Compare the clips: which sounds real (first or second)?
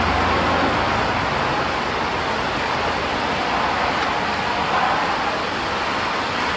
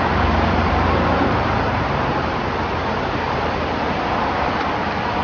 first